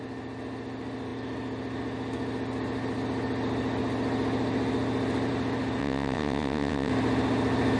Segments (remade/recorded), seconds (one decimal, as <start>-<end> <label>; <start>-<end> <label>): 0.0-5.8 recorded; 5.8-6.9 remade; 6.9-7.8 recorded